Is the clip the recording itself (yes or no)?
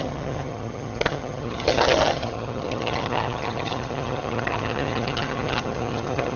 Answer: no